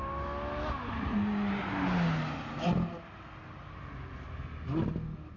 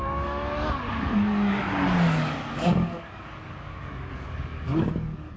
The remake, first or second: second